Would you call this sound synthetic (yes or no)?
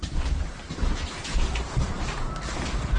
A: yes